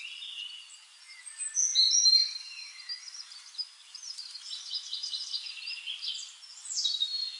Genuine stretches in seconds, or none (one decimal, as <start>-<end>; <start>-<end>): 0.0-7.4